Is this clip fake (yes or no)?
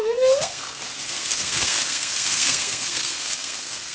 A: yes